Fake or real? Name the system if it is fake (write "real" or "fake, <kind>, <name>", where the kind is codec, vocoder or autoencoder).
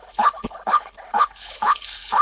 fake, codec, HILCodec